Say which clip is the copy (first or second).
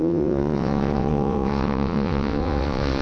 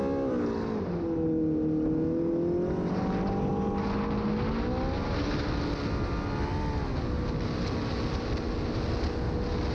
first